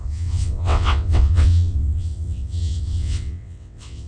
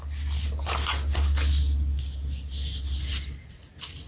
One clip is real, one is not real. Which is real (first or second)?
second